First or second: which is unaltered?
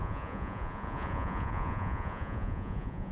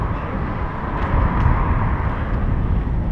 second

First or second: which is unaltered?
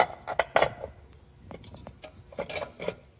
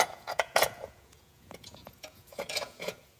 first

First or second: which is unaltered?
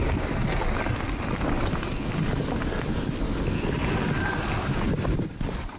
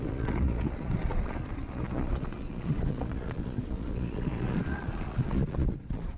first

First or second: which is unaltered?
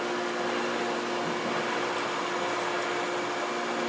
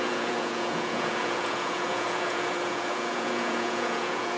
first